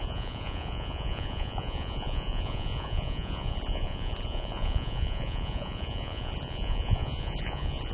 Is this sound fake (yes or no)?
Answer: yes